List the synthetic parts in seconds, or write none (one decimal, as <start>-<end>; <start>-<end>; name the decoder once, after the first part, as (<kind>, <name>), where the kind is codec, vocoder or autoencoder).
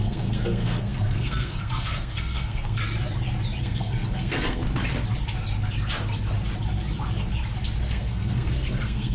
0.0-2.8 (codec, SNAC); 3.6-4.6; 7.9-9.1